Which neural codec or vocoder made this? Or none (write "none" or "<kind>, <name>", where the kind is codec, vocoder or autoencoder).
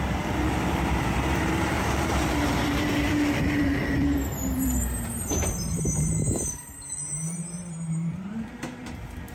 vocoder, BigVGAN v2